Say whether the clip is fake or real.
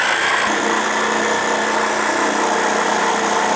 real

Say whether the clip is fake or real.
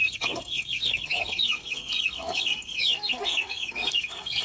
fake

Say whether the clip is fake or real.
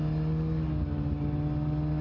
real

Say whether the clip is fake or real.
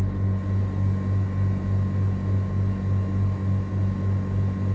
real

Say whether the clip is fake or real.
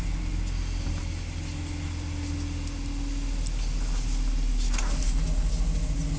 real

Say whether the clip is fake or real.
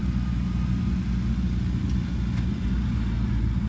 real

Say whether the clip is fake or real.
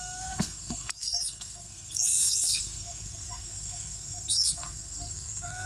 fake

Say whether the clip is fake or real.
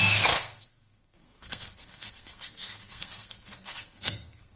fake